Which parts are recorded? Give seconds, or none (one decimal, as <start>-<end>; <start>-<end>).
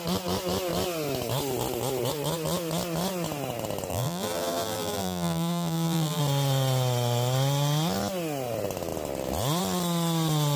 0.0-3.9; 6.2-10.6